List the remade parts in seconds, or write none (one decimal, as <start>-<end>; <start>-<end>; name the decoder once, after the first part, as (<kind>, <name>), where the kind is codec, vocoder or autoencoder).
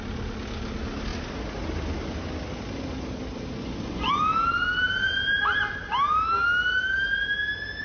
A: 3.6-4.1 (vocoder, Vocos)